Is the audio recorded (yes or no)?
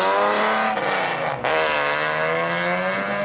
yes